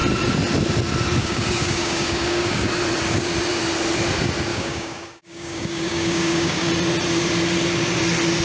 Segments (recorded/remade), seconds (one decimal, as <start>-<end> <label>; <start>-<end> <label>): 0.0-1.2 recorded; 1.2-2.7 remade; 2.7-4.5 recorded; 4.5-6.7 remade; 6.7-8.4 recorded